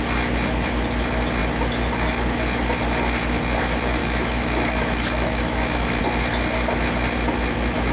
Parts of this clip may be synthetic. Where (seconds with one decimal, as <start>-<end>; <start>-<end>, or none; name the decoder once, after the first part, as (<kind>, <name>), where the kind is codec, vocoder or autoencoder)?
4.0-6.0 (autoencoder, DAC-VAE)